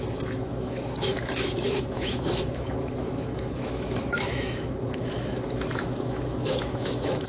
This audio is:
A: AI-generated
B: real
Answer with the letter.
A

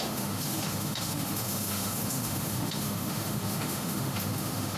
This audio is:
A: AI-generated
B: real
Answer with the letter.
A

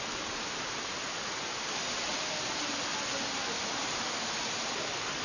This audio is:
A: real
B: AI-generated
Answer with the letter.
A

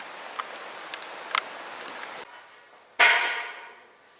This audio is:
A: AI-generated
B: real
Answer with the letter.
B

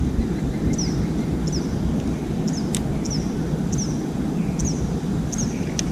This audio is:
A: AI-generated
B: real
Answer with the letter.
B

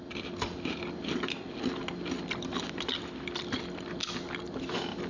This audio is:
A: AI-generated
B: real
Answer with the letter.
B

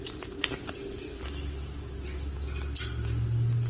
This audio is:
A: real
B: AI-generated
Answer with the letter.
A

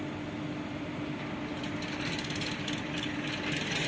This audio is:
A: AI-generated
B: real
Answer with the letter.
B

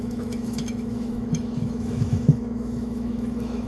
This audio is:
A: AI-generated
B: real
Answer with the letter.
A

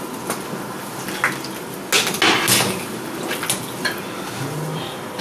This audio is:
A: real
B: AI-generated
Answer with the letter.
A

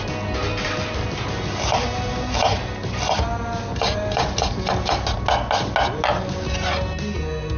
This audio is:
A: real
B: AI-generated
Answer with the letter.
A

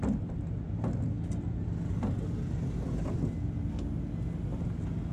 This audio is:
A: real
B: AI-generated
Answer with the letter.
A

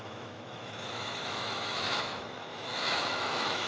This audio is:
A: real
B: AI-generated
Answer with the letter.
B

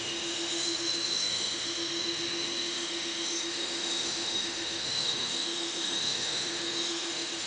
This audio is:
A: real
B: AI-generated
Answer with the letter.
B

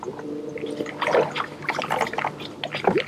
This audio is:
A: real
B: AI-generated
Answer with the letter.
A